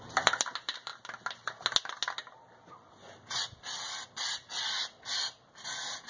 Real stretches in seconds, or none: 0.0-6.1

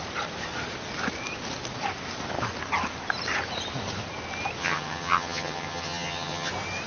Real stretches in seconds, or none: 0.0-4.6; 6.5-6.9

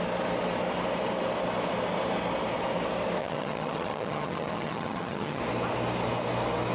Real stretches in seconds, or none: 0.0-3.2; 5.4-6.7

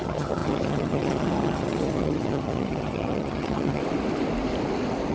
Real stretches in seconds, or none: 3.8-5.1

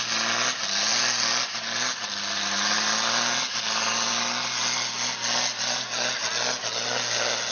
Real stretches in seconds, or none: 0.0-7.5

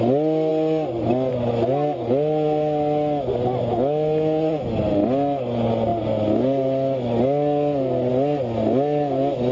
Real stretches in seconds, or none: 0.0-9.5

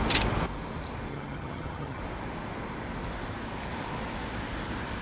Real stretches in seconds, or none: 0.0-1.1; 2.0-5.0

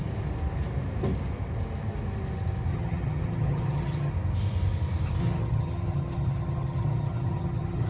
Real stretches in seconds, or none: 0.0-2.7; 4.1-5.2